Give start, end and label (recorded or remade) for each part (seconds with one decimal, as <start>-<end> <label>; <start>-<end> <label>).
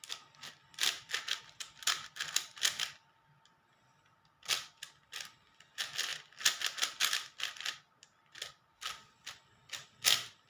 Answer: 0.0-10.5 recorded